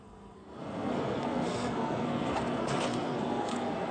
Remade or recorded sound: remade